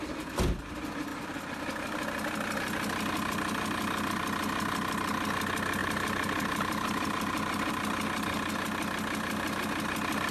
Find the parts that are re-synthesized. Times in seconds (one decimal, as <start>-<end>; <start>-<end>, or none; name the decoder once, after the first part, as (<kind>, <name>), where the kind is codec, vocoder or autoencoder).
5.8-7.7 (vocoder, BigVGAN v2)